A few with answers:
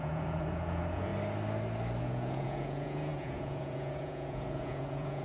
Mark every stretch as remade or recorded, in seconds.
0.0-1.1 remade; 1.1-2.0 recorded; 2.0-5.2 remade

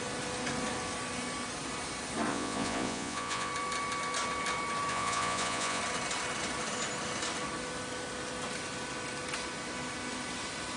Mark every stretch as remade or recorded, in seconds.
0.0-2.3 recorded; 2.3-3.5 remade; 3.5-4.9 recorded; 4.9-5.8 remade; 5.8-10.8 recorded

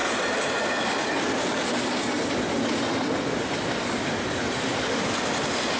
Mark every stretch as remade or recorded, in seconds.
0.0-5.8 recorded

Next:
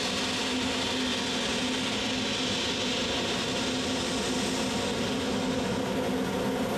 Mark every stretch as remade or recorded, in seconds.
0.0-6.8 recorded